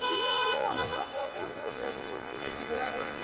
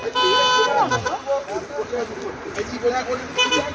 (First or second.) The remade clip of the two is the first